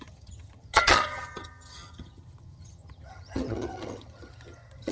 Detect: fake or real fake